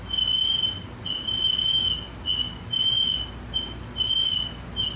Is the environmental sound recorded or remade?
recorded